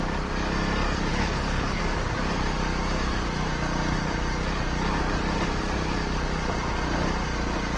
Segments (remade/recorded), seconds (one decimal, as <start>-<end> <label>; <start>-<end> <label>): 0.0-1.1 recorded; 1.1-1.8 remade; 1.8-7.8 recorded